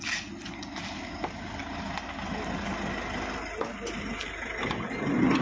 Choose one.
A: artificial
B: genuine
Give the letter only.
B